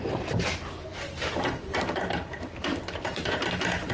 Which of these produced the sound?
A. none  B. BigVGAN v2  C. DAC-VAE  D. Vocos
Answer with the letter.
B